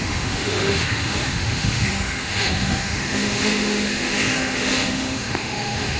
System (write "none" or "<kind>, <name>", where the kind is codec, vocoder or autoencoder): autoencoder, DAC-VAE